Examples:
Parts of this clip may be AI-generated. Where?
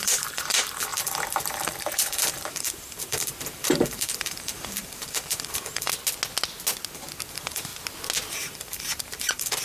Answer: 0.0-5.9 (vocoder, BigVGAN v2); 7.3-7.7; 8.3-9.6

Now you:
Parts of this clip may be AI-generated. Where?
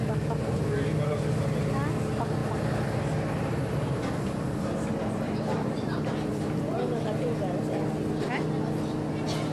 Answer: 2.4-6.7 (vocoder, BigVGAN v2)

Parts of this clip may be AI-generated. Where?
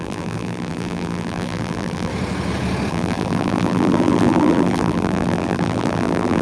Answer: 0.0-2.1 (vocoder, BigVGAN v2); 2.9-6.4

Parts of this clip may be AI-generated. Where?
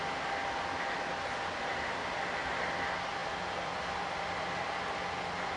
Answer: none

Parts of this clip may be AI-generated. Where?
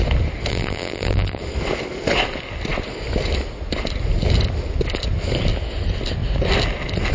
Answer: 0.5-1.4 (vocoder, BigVGAN v2)